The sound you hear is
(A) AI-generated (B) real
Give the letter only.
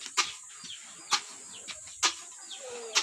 B